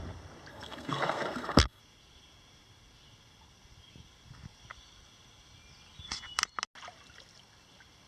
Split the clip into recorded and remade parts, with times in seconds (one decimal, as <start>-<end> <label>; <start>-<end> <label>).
0.0-0.5 recorded; 0.5-1.8 remade; 1.8-8.1 recorded